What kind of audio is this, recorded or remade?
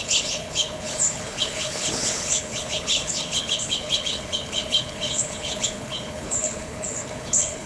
remade